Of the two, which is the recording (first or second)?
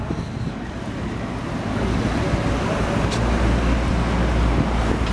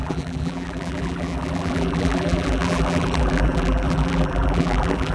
first